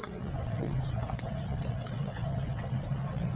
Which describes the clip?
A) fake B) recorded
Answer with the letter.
A